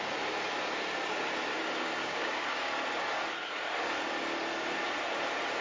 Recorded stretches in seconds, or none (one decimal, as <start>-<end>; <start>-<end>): 0.0-1.5; 2.7-5.6